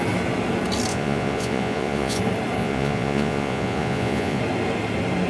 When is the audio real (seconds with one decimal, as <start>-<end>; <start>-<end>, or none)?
0.0-0.9; 2.2-2.6; 4.4-5.3